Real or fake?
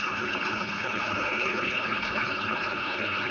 fake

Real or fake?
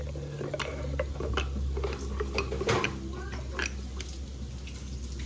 real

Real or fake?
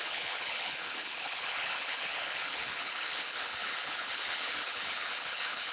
fake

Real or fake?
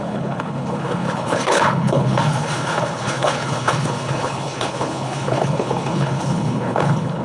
fake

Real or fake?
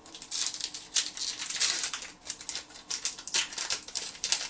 real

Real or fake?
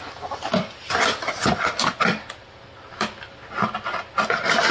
real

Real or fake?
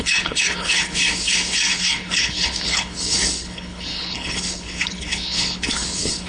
fake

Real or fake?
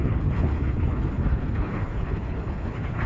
fake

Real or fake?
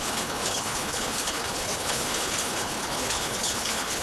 fake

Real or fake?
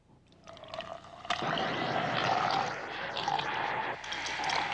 real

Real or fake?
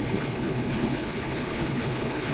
fake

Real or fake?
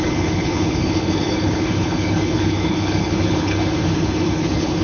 fake